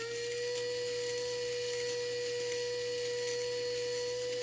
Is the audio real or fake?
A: real